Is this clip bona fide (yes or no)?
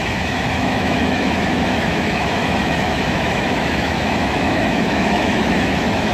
no